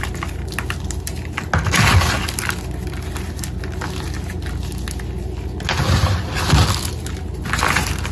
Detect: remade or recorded recorded